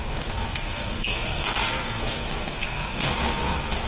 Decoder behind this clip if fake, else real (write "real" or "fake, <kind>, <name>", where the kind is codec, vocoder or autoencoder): fake, codec, SNAC